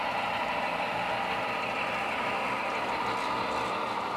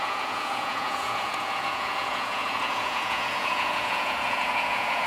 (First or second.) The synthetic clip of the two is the second